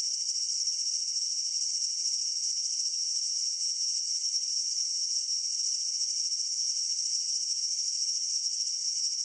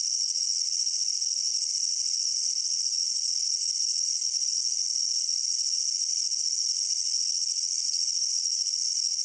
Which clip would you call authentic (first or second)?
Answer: second